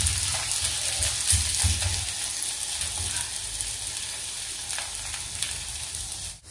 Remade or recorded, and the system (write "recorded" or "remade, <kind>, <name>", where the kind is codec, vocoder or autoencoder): recorded